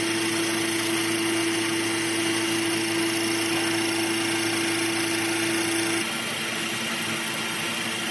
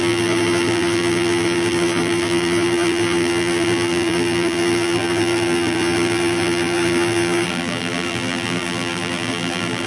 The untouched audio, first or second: first